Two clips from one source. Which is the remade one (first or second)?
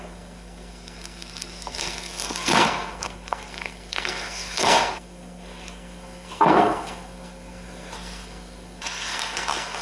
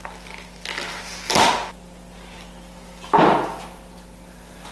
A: first